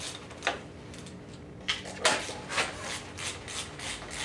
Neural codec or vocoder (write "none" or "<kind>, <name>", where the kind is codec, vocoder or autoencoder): none